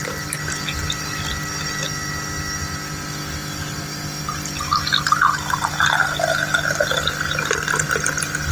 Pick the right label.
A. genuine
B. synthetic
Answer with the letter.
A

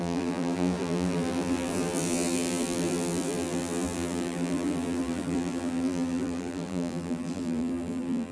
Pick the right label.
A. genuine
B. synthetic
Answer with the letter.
B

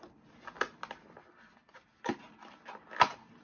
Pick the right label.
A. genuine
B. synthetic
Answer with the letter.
A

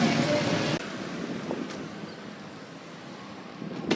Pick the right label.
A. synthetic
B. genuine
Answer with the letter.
B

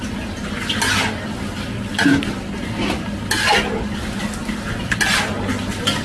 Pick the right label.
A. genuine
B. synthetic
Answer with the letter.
A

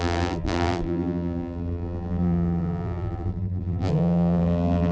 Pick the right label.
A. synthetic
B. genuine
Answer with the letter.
A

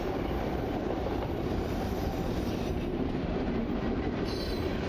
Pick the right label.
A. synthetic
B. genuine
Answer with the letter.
A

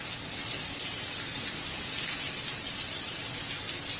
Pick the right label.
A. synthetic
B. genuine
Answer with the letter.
A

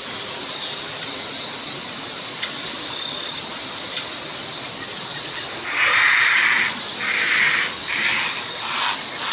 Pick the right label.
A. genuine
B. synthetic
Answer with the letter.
A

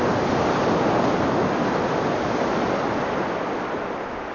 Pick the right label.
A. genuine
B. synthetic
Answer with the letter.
A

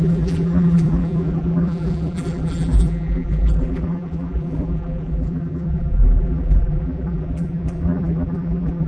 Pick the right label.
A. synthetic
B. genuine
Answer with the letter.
A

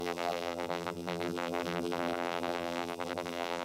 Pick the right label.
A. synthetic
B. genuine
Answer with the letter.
A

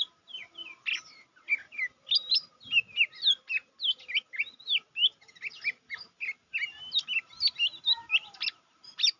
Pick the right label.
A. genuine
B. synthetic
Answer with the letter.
A